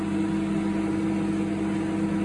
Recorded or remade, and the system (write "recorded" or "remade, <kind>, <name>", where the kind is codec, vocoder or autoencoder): recorded